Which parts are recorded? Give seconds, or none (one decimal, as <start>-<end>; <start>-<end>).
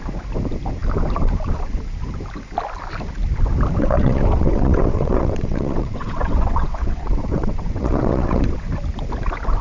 0.0-3.8; 8.7-9.6